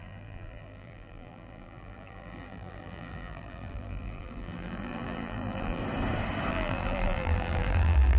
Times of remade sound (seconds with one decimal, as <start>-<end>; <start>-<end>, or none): 0.0-5.8; 6.5-8.2

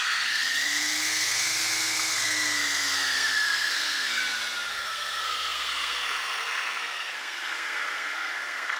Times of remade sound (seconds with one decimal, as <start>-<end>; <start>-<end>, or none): 0.0-4.2; 4.7-8.8

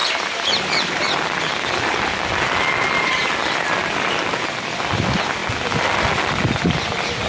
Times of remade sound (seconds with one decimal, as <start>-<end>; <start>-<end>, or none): none

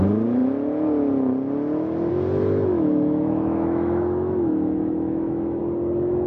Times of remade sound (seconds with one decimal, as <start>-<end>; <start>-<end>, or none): 2.7-5.6

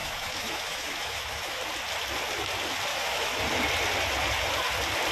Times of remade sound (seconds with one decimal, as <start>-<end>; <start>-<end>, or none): 0.0-1.6; 2.9-3.4

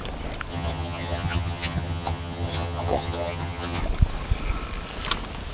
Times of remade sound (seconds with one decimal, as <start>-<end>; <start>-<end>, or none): 0.5-3.8